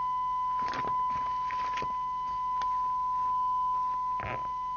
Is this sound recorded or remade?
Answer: recorded